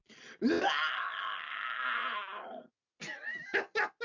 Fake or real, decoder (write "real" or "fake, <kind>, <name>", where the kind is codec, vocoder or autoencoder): real